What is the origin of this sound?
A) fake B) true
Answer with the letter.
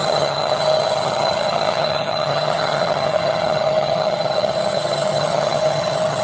A